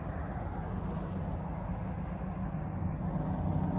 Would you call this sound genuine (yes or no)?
yes